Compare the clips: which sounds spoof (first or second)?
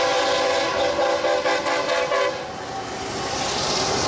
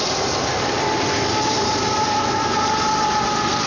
second